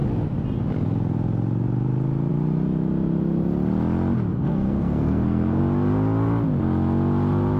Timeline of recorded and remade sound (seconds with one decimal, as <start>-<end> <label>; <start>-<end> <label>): 0.0-4.3 recorded; 4.3-5.6 remade; 5.6-7.6 recorded